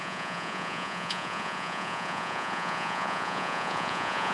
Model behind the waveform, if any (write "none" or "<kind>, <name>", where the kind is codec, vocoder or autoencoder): vocoder, Vocos